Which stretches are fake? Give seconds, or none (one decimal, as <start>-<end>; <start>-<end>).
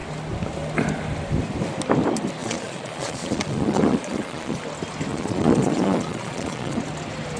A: 2.4-4.6; 5.1-6.8